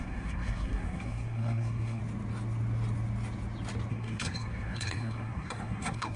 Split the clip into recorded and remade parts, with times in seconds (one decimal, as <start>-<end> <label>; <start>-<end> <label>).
0.0-2.0 remade; 2.0-3.9 recorded; 3.9-6.2 remade